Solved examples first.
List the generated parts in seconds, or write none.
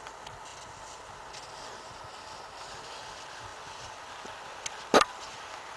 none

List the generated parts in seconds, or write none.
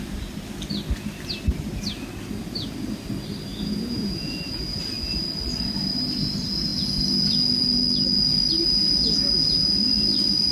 3.5-4.8 (vocoder, Vocos)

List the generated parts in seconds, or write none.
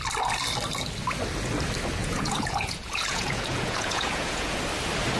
2.0-4.6 (vocoder, Vocos)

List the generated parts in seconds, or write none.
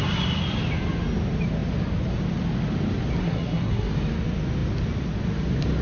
3.2-3.9 (codec, SNAC)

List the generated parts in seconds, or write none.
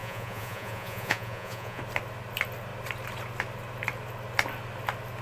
0.0-1.8 (vocoder, Vocos)